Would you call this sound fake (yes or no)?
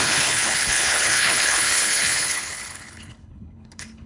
yes